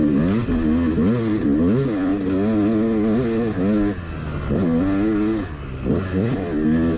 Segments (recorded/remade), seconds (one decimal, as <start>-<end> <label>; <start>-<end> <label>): 0.0-7.0 recorded